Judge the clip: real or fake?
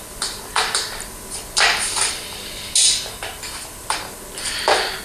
real